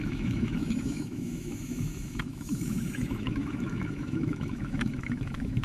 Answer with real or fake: fake